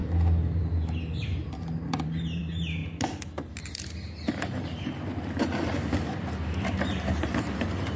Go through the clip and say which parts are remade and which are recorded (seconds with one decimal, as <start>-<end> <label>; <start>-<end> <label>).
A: 0.0-0.6 recorded; 0.6-2.8 remade; 2.8-4.3 recorded; 4.3-5.1 remade; 5.1-6.8 recorded; 6.8-8.0 remade

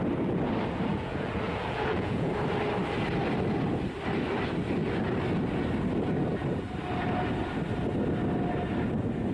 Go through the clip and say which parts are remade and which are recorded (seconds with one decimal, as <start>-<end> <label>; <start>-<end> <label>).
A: 0.0-0.9 recorded; 0.9-2.3 remade; 2.3-9.3 recorded

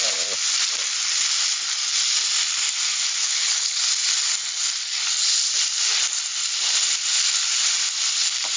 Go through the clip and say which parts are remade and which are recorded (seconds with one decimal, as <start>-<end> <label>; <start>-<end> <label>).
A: 0.0-3.2 recorded; 3.2-3.8 remade; 3.8-8.6 recorded

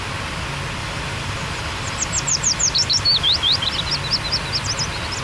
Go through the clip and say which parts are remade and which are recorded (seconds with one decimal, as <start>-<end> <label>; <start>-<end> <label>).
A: 0.0-0.8 recorded; 0.8-3.9 remade; 3.9-5.2 recorded